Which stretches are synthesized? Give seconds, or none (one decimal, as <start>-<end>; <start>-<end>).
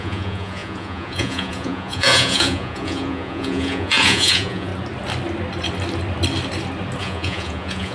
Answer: 0.0-4.7; 7.0-7.9